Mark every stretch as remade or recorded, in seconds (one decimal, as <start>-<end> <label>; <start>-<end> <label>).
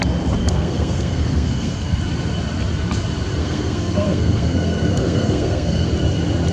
0.0-0.4 recorded; 0.4-2.0 remade; 2.0-3.4 recorded; 3.4-5.9 remade; 5.9-6.5 recorded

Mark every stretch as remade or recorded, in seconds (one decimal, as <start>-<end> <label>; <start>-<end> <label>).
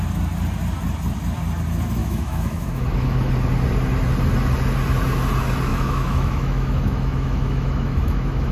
0.0-2.0 recorded; 2.0-3.3 remade; 3.3-5.7 recorded; 5.7-8.5 remade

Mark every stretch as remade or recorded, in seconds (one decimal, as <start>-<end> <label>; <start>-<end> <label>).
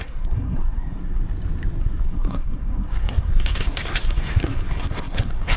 0.0-1.2 remade; 1.2-1.8 recorded; 1.8-5.6 remade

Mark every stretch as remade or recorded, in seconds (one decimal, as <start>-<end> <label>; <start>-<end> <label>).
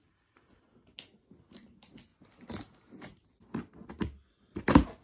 0.0-5.0 recorded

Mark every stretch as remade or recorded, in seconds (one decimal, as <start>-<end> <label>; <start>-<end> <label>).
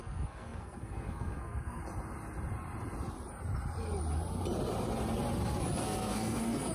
0.0-1.8 remade; 1.8-5.8 recorded; 5.8-6.7 remade